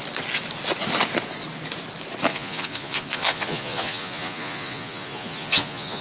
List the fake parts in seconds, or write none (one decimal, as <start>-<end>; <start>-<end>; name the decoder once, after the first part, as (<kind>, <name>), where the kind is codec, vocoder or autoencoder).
2.3-6.0 (vocoder, Vocos)